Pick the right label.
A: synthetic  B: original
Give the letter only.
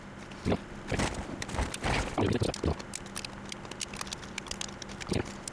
B